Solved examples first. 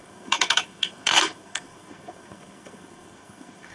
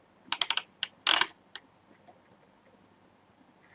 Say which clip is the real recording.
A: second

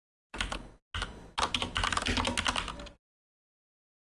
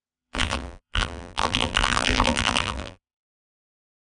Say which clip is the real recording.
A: first